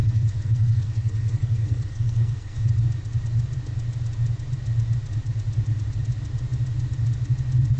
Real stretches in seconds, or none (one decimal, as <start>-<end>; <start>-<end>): 2.7-7.8